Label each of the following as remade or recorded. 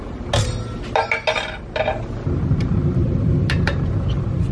recorded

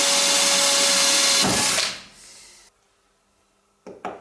recorded